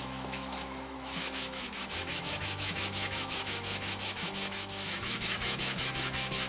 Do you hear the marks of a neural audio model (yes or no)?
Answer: yes